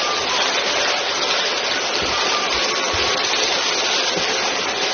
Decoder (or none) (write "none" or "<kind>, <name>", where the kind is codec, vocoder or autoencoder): none